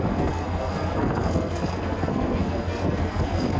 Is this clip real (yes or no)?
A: no